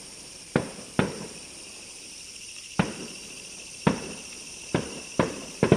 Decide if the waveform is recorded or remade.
remade